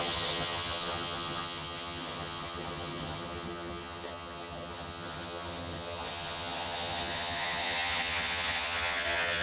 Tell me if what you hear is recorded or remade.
remade